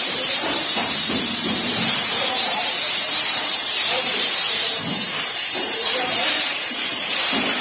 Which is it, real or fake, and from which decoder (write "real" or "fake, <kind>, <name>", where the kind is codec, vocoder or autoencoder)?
fake, vocoder, BigVGAN v2